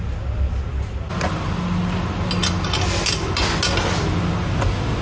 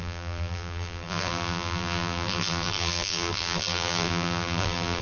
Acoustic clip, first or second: first